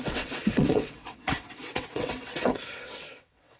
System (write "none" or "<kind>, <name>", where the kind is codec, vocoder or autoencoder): vocoder, WaveNeXt